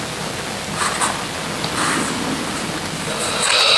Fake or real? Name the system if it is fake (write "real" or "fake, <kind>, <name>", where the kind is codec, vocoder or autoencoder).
real